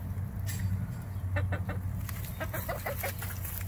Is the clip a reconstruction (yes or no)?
no